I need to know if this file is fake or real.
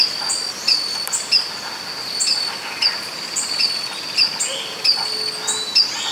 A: real